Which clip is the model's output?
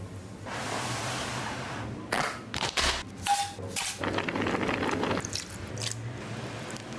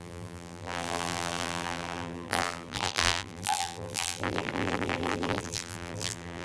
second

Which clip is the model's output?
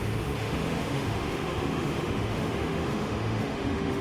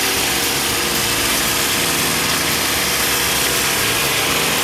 first